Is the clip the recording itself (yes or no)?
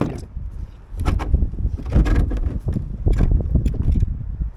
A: yes